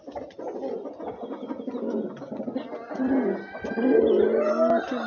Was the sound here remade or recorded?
recorded